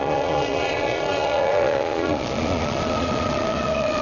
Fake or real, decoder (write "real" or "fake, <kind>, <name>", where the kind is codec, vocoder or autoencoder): fake, vocoder, Vocos